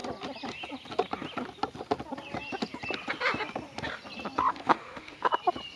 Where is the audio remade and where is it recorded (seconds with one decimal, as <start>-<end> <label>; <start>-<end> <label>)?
0.0-4.5 recorded; 4.5-5.3 remade; 5.3-5.8 recorded